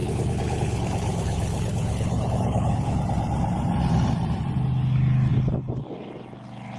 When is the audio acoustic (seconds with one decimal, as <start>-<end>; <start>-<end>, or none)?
3.0-6.8